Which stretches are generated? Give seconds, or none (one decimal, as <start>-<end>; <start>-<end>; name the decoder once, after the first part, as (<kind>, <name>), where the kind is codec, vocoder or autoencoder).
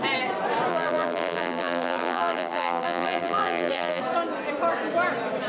0.7-4.0 (vocoder, BigVGAN v2)